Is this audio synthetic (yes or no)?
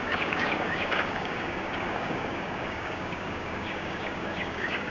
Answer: yes